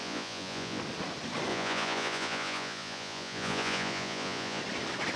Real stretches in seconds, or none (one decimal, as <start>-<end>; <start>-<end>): 0.8-1.5; 4.6-5.2